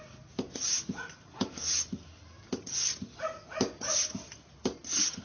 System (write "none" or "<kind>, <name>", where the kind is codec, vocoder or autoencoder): none